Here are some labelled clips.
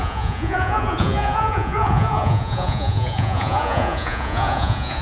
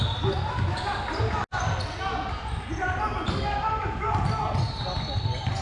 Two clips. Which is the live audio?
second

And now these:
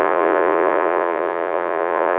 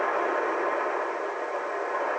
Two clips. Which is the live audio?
second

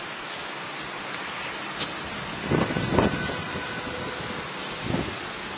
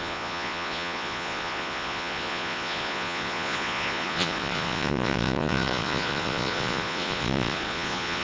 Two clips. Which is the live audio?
first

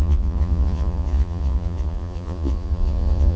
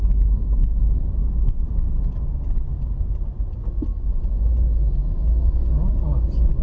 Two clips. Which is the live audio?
second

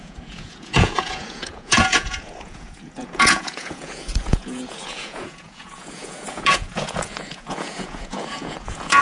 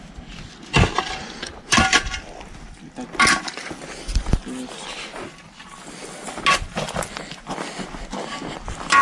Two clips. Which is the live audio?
second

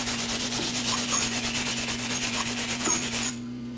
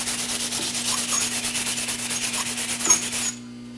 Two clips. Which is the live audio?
second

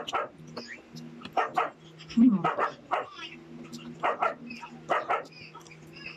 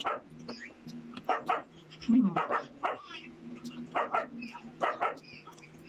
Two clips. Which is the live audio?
first